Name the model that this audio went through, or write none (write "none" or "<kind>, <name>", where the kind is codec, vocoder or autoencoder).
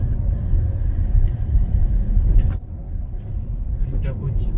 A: vocoder, BigVGAN v2